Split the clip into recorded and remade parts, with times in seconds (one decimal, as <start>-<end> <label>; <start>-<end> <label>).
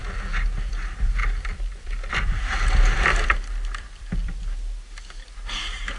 0.0-1.2 recorded; 1.2-4.4 remade; 4.4-6.0 recorded